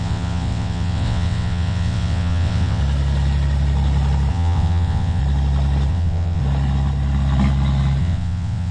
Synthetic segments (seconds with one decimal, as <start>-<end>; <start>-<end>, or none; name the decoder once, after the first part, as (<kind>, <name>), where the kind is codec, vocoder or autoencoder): 0.0-2.8 (vocoder, WaveNeXt); 4.3-5.2; 5.9-6.4; 8.0-8.7